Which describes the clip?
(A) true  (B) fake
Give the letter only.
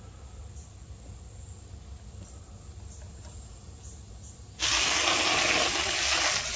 A